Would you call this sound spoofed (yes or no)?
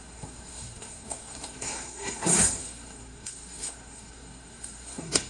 yes